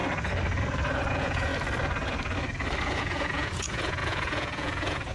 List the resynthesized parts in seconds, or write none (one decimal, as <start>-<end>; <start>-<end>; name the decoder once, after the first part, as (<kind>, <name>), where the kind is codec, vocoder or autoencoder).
1.1-1.5 (vocoder, Vocos); 2.8-5.1